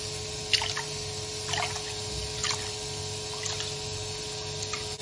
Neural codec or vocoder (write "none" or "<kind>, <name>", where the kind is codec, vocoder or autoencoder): none